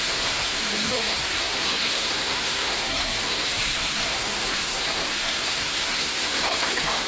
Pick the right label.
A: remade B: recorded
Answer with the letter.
A